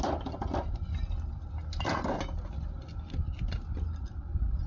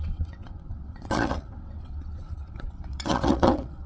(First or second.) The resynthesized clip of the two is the second